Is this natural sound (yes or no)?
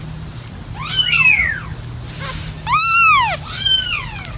yes